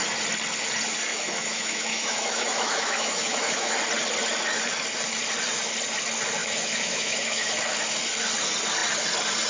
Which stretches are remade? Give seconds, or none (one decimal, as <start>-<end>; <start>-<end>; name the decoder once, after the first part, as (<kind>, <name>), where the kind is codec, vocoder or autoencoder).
1.1-3.7 (autoencoder, DAC-VAE); 6.4-7.5